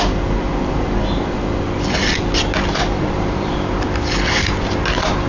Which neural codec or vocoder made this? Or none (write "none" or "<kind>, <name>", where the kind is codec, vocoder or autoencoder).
none